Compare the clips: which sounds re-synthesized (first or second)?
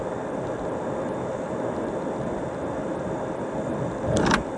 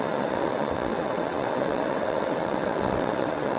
second